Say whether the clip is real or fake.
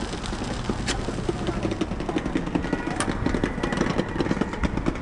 real